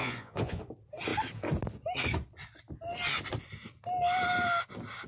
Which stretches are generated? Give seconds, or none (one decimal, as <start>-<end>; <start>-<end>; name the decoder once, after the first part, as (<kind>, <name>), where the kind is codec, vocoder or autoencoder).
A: 0.0-0.6 (vocoder, Vocos)